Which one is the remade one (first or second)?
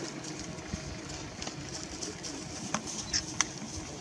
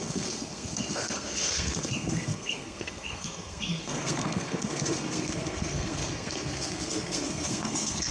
second